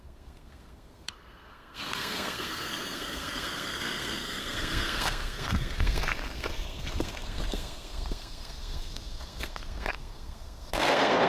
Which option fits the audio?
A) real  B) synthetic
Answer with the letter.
B